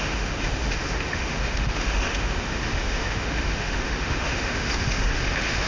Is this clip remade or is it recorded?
remade